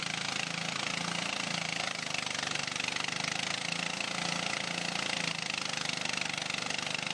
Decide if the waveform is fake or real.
real